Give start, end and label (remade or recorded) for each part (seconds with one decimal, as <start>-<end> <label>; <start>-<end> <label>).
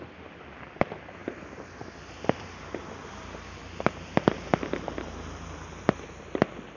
0.0-6.8 recorded